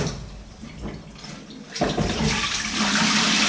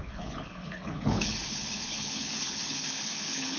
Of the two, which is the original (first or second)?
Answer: first